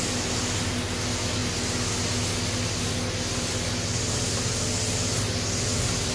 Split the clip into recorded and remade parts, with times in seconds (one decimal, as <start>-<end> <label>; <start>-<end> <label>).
0.0-6.1 recorded